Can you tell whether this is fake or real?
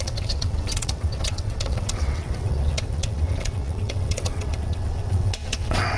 fake